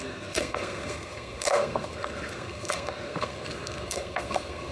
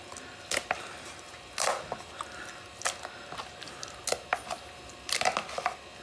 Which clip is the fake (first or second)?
first